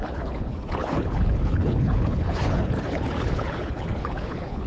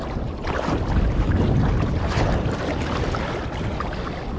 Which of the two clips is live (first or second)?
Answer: second